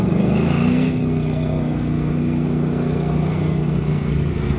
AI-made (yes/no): yes